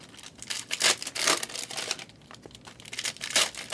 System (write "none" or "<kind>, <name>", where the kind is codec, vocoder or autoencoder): none